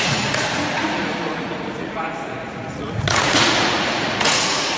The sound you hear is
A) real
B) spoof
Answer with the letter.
B